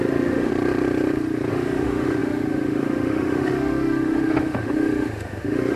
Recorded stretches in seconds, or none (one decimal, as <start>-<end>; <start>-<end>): 0.5-1.5